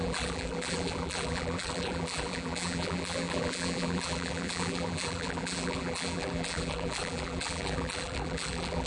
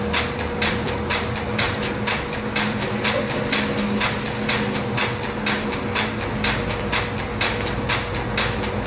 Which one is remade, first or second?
first